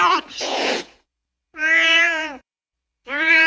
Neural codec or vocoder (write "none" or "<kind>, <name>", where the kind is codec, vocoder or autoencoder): vocoder, Vocos